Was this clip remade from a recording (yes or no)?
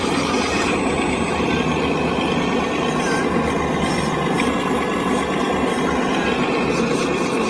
no